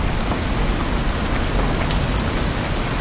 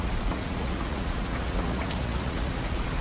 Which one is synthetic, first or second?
second